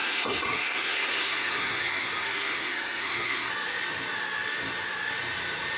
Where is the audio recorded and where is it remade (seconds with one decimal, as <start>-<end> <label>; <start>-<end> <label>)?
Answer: 0.0-3.5 remade; 3.5-5.8 recorded